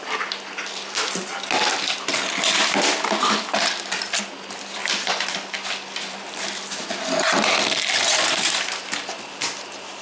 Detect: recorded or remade recorded